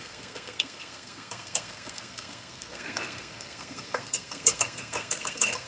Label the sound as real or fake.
fake